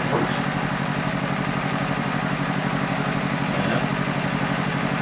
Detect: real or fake real